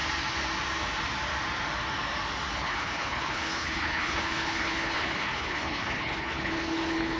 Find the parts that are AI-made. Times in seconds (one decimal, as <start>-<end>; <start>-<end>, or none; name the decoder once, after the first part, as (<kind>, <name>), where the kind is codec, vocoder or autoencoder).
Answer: 2.6-7.2 (codec, HILCodec)